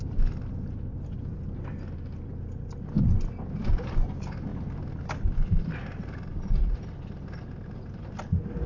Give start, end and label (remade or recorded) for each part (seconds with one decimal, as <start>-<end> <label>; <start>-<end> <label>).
0.0-8.7 recorded